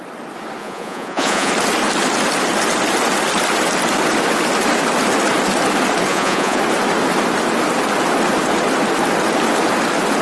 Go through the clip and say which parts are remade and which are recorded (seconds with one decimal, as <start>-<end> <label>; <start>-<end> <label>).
0.0-0.6 recorded; 0.6-1.5 remade; 1.5-6.1 recorded; 6.1-6.6 remade; 6.6-10.2 recorded